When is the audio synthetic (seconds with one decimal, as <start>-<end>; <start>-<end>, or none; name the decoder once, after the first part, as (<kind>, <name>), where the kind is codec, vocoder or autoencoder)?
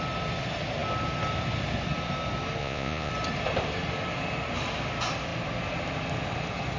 2.6-3.1 (vocoder, Vocos)